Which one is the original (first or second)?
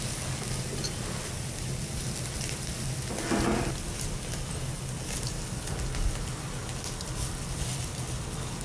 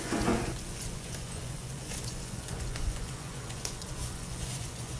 first